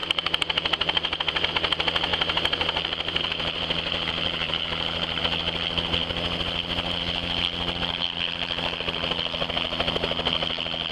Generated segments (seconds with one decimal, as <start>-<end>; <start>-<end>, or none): 0.0-1.5; 2.1-5.2